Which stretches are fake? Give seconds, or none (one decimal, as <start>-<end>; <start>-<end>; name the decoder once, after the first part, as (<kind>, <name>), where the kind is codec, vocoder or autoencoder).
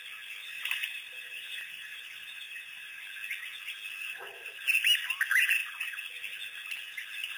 0.4-3.0 (vocoder, BigVGAN v2)